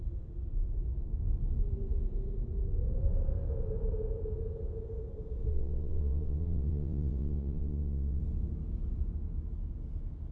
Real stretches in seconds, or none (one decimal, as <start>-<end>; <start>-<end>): 0.0-5.5; 8.2-10.3